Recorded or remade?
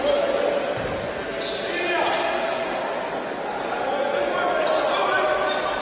recorded